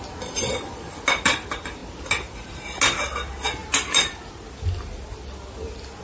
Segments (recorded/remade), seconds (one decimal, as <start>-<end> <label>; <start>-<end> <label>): 0.0-3.6 recorded; 3.6-4.3 remade; 4.3-6.0 recorded